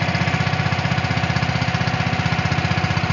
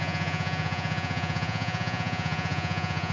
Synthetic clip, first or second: second